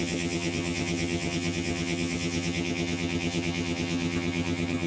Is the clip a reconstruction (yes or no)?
yes